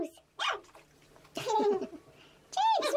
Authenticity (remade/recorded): recorded